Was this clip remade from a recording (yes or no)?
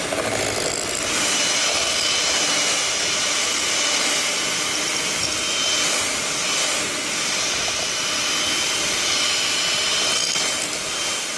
no